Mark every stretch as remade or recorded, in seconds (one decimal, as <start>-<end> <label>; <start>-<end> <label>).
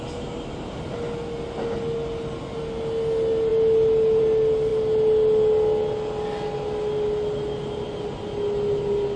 0.0-9.2 recorded